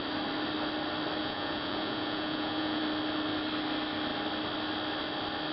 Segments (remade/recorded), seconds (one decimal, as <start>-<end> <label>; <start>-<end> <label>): 0.0-1.2 recorded; 1.2-2.8 remade; 2.8-5.5 recorded